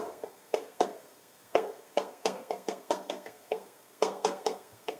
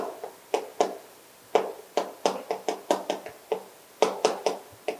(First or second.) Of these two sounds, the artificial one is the first